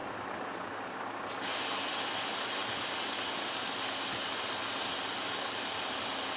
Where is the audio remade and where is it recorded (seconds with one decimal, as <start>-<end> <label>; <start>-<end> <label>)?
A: 0.0-6.4 recorded